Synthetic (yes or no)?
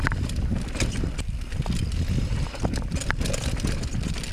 no